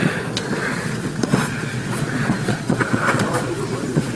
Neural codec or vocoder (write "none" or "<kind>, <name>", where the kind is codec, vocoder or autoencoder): vocoder, Vocos